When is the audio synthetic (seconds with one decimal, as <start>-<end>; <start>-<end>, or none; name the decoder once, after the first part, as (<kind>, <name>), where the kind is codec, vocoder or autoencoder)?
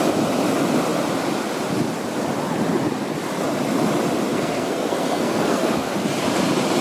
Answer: 4.3-5.9 (codec, SNAC)